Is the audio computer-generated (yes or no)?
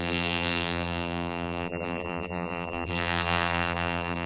yes